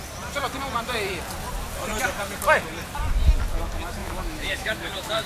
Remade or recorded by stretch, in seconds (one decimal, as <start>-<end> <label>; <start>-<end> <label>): 0.0-4.0 recorded; 4.0-5.3 remade